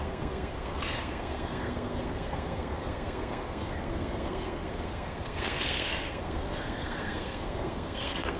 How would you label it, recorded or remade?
remade